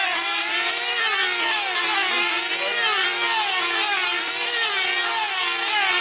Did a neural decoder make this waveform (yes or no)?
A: no